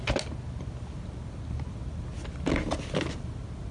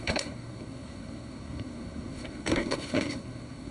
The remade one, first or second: second